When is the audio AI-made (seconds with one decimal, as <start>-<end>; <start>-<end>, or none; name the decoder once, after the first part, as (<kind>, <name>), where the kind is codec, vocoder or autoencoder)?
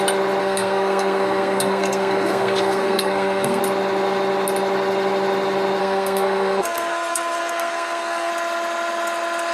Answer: 0.4-3.6 (codec, SNAC); 5.8-8.3